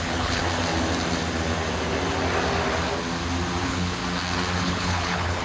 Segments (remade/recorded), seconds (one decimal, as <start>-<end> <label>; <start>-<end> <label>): 0.0-0.4 remade; 0.4-3.6 recorded; 3.6-4.0 remade; 4.0-4.6 recorded; 4.6-5.4 remade